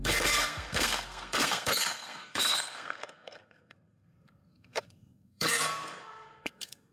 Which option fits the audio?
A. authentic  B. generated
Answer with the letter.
B